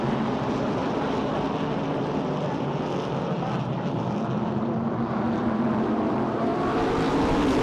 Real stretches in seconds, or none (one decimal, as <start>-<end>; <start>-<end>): 6.5-7.1

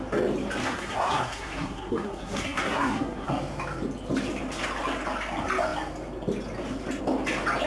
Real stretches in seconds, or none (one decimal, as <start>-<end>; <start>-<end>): 0.0-0.6; 3.3-7.7

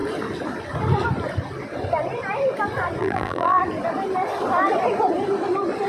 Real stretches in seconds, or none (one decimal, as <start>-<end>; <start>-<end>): 0.0-3.0; 3.6-5.9

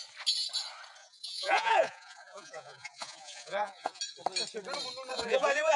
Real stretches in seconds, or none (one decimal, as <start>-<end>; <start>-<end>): 0.0-1.0; 4.0-5.1

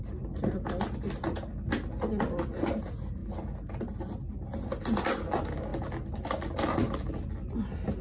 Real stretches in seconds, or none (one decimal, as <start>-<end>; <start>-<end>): 0.0-8.0